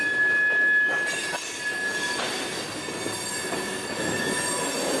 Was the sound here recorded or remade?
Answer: recorded